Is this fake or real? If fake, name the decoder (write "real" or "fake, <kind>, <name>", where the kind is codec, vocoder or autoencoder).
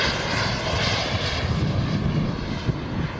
real